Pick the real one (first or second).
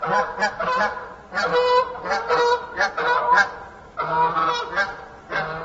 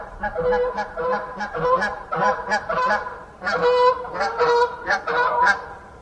first